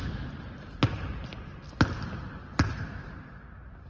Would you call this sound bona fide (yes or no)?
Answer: yes